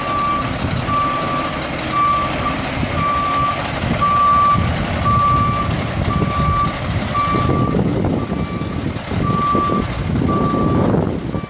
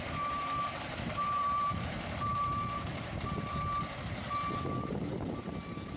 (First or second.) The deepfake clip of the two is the second